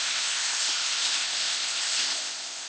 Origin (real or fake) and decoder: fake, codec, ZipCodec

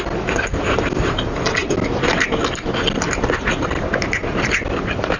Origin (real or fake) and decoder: real